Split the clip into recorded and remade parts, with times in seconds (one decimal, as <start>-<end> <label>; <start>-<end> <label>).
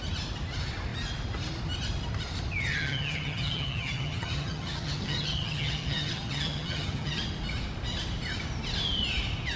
0.0-2.7 recorded; 2.7-7.2 remade; 7.2-9.6 recorded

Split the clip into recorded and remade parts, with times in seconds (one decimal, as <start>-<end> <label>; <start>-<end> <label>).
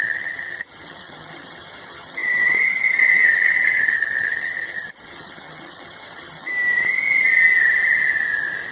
0.0-6.5 remade; 6.5-8.7 recorded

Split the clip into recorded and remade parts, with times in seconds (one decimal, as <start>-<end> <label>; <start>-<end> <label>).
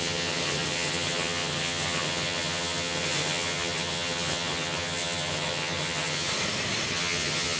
0.0-6.3 remade; 6.3-6.9 recorded; 6.9-7.6 remade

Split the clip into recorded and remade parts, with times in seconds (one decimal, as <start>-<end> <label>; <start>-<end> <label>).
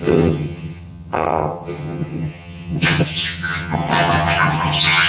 0.0-5.1 remade